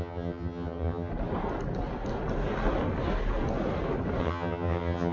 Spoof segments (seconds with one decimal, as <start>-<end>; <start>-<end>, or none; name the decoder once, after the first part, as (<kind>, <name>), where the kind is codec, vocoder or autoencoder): 0.0-1.1 (vocoder, HiFi-GAN); 4.2-5.1